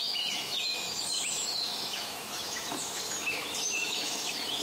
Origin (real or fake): fake